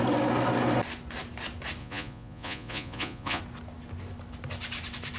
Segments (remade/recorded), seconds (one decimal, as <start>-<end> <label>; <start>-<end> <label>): 0.0-1.8 recorded; 1.8-3.4 remade; 3.4-5.2 recorded